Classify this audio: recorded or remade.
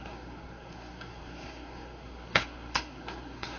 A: remade